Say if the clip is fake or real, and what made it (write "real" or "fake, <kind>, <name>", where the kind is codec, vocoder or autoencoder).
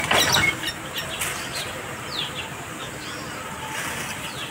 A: real